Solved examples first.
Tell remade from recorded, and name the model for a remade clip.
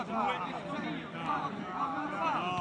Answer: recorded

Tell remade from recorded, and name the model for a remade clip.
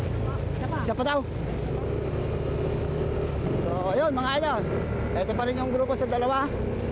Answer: recorded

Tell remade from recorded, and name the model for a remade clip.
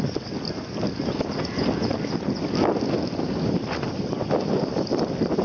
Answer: recorded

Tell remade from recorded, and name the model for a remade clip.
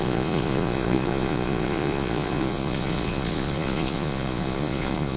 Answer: remade, vocoder, Vocos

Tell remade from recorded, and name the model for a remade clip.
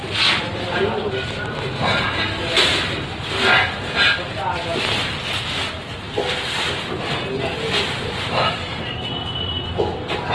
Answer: recorded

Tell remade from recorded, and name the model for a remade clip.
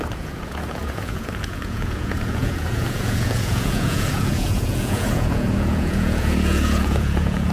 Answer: remade, vocoder, Vocos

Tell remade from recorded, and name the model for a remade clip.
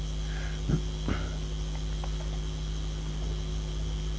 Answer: recorded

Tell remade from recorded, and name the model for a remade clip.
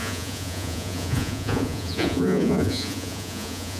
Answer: remade, vocoder, Vocos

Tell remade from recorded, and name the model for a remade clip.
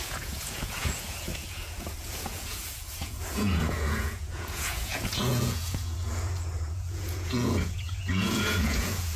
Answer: remade, vocoder, Vocos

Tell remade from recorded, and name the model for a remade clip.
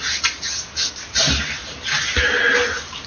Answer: recorded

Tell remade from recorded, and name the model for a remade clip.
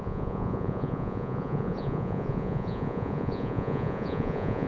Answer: remade, vocoder, Vocos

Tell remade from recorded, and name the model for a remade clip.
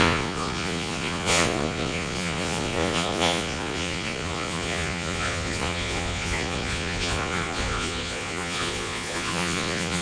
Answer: remade, vocoder, Vocos